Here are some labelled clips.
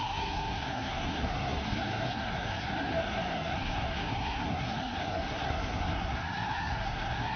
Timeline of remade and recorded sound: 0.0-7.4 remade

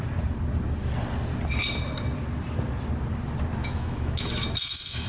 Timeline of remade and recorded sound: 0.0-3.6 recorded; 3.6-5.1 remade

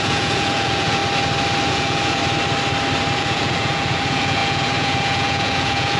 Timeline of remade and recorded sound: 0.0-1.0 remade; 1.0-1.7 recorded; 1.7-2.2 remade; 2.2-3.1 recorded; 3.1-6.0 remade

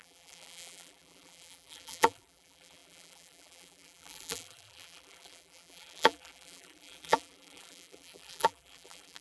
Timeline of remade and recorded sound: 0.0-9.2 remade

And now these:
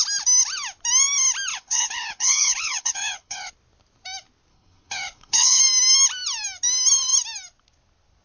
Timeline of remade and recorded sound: 0.0-1.5 recorded; 1.5-3.5 remade; 3.5-4.5 recorded; 4.5-5.6 remade; 5.6-8.2 recorded

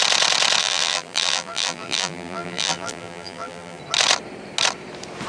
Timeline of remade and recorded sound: 0.0-0.6 recorded; 0.6-3.8 remade; 3.8-5.3 recorded

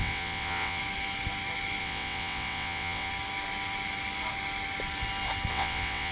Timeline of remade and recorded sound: 0.0-0.8 remade; 0.8-1.8 recorded; 1.8-3.1 remade; 3.1-5.5 recorded; 5.5-6.1 remade

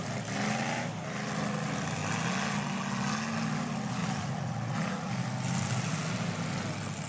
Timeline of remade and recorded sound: 0.0-4.0 recorded; 4.0-5.1 remade; 5.1-7.1 recorded